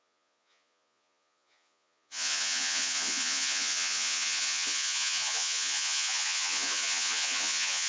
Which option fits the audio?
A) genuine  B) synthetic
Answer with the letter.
B